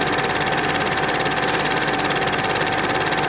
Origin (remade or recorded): recorded